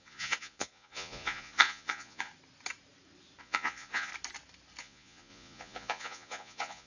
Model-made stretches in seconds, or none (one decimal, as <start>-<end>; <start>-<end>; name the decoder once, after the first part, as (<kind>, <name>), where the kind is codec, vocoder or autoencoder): 0.0-2.3 (vocoder, Vocos); 3.4-4.1; 4.8-6.9